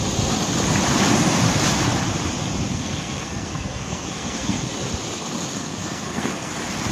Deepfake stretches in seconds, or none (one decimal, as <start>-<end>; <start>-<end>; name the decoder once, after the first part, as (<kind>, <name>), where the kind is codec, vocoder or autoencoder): 2.7-4.7 (codec, SNAC); 5.5-6.5